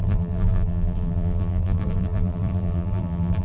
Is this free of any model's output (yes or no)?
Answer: no